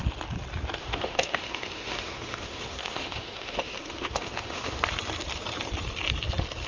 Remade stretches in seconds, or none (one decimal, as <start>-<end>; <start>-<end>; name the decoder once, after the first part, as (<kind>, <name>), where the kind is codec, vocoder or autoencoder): 0.8-4.8 (autoencoder, DAC-VAE)